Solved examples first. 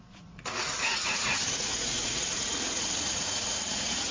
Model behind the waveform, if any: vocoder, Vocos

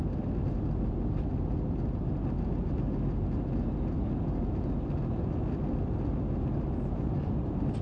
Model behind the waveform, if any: none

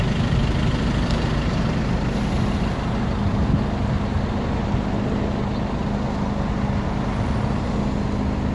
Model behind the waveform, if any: none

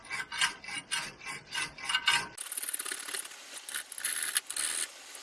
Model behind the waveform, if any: none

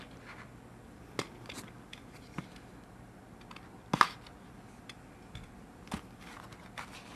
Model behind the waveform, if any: none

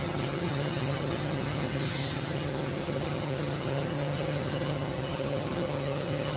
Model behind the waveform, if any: vocoder, HiFi-GAN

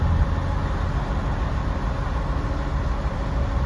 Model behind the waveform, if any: none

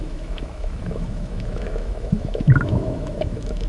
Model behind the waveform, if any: autoencoder, DAC-VAE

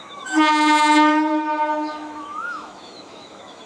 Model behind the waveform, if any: autoencoder, DAC-VAE